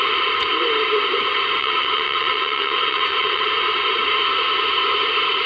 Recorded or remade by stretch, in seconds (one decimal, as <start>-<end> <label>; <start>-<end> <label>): 0.0-1.6 recorded; 1.6-3.5 remade; 3.5-5.5 recorded